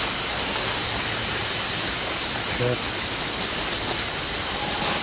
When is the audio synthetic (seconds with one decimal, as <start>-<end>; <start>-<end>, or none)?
none